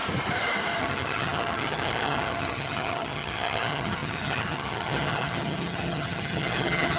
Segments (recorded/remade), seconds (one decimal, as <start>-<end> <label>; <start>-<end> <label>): 0.0-0.8 recorded; 0.8-7.0 remade